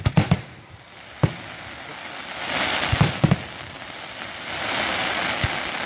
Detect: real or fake real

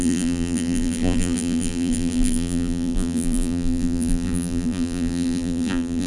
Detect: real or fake fake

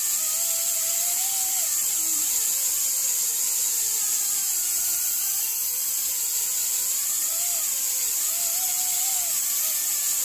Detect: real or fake real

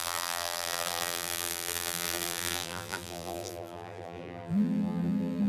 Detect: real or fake fake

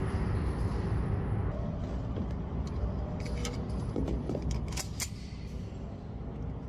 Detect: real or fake real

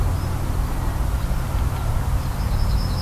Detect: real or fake fake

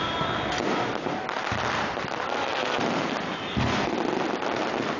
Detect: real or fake real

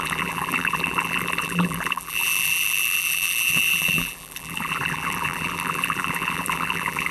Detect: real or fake fake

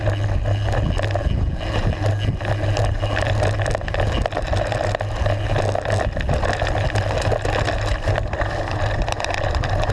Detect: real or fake real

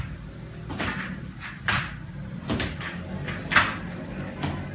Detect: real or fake real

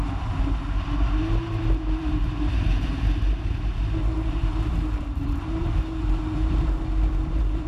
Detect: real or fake fake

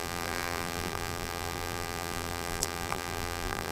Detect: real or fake fake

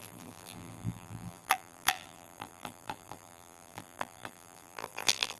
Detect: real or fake fake